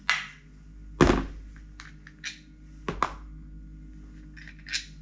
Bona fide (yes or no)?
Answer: yes